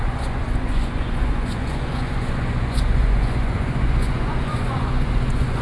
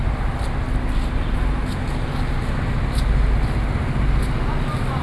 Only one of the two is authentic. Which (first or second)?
second